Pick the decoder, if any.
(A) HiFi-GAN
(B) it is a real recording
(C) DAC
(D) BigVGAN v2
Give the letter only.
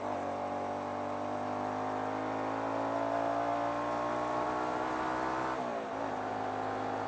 B